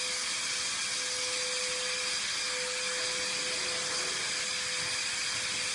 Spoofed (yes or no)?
no